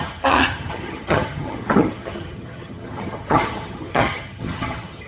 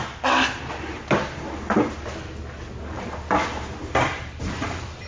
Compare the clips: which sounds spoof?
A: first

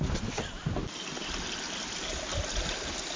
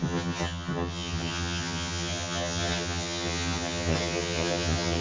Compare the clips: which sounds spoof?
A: second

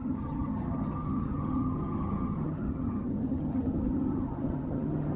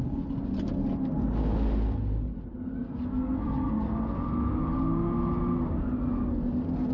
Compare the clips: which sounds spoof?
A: first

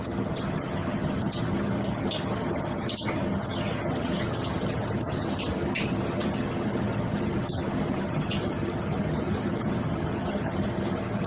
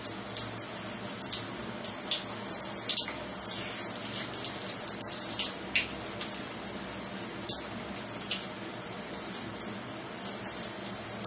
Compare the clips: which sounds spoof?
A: first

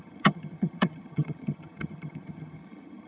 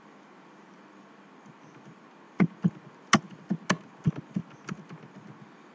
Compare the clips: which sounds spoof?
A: first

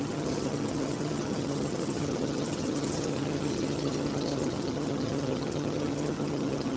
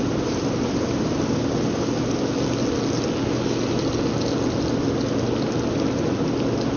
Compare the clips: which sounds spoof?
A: first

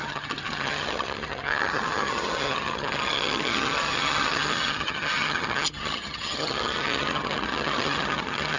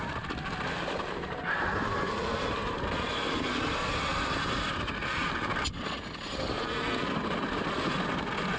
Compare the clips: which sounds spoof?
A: first